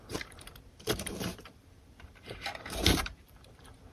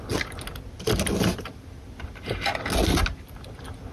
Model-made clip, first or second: first